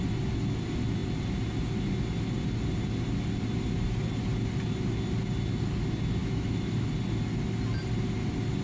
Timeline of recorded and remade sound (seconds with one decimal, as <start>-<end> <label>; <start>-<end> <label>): 0.0-6.2 recorded; 6.2-6.9 remade; 6.9-8.6 recorded